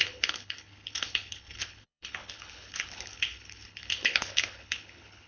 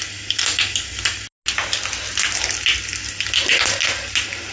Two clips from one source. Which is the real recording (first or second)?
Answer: second